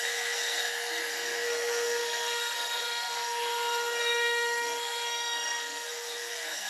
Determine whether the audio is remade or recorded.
remade